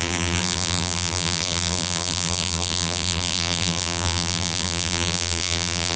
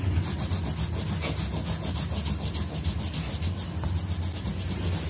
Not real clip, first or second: first